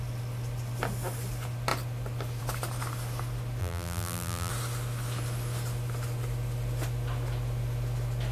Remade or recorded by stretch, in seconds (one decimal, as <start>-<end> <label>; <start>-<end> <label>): 0.0-3.6 recorded; 3.6-4.5 remade; 4.5-8.3 recorded